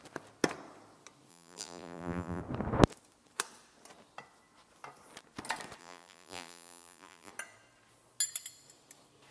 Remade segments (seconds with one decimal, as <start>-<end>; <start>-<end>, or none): 1.3-2.4; 5.8-7.3